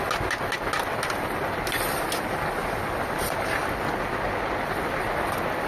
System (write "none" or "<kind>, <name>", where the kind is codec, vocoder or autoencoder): none